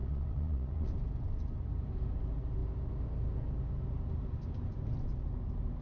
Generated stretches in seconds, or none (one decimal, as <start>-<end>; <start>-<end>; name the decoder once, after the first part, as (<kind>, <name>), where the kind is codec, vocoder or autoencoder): 0.0-0.9 (vocoder, Vocos)